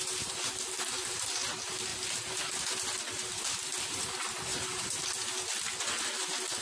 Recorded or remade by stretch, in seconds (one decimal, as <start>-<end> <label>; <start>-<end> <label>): 0.0-6.6 recorded